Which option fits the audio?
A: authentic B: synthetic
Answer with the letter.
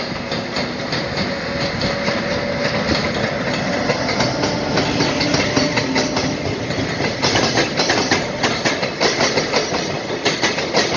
A